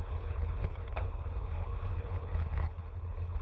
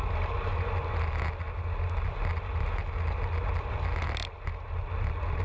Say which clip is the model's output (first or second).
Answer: first